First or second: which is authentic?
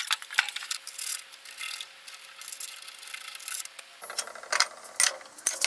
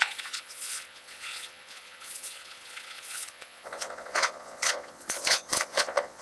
first